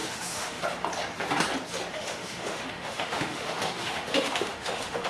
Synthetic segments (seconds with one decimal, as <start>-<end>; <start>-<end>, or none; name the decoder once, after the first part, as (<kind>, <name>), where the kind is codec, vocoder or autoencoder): 0.0-0.6 (autoencoder, DAC-VAE); 1.9-5.1